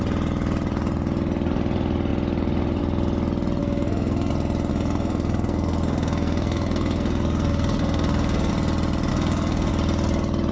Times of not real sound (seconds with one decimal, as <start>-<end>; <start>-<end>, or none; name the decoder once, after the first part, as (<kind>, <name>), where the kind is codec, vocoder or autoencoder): 3.6-4.3 (codec, SNAC); 4.7-8.5; 9.1-9.7